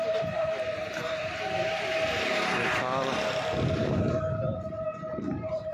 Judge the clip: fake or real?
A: fake